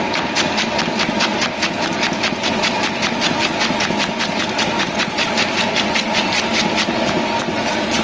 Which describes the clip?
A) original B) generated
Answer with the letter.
A